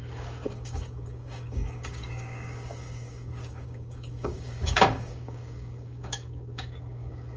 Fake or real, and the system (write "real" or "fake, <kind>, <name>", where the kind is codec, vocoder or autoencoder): fake, codec, DAC